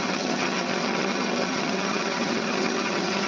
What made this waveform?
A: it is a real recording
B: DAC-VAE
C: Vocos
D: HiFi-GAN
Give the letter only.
D